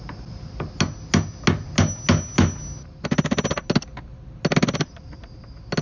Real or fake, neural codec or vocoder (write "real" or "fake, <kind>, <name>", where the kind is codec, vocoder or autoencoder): real